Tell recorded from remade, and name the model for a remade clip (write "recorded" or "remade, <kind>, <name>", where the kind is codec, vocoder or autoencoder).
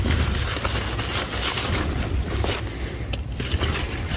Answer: recorded